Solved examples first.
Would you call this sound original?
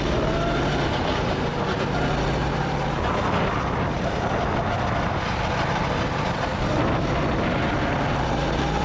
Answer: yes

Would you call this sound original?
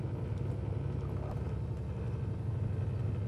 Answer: yes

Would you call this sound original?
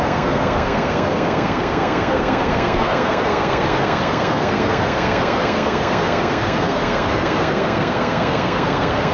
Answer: no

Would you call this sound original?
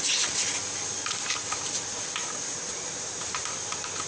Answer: yes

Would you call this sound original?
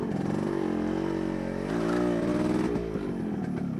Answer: yes